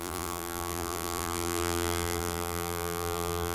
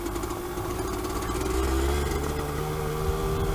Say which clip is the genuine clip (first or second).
second